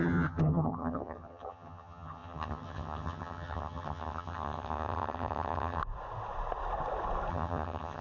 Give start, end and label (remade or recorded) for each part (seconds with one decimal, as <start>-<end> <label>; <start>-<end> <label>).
0.0-5.8 remade; 5.8-7.3 recorded; 7.3-8.0 remade